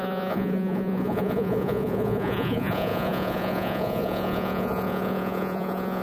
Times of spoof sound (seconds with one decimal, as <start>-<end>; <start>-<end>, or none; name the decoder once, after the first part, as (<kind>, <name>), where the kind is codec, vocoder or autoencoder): 0.0-6.0 (vocoder, Vocos)